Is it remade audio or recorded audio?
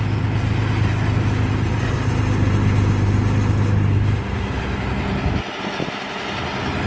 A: recorded